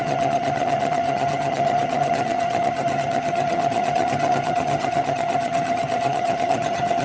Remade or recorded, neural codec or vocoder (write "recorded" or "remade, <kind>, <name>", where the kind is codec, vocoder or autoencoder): remade, vocoder, HiFi-GAN